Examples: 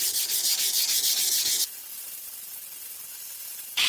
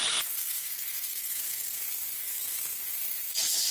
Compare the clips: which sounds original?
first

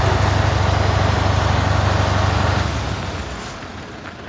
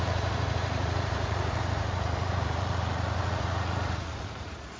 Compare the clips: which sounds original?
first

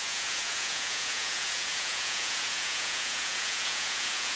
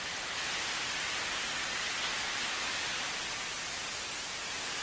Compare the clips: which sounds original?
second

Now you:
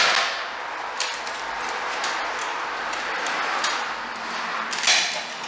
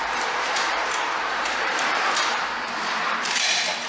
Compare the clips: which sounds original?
first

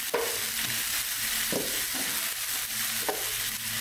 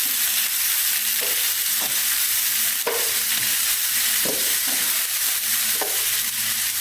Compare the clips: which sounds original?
first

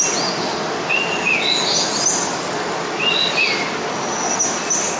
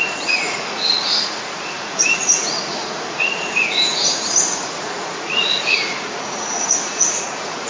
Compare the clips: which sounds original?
first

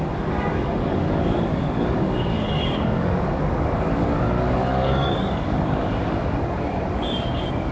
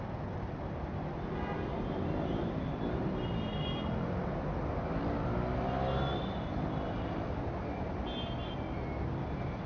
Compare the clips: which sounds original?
second